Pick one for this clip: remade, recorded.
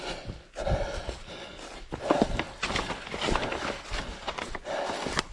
recorded